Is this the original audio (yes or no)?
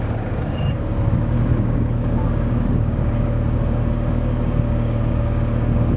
no